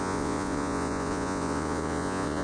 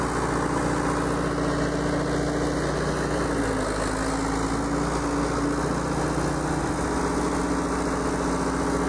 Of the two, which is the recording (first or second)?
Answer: second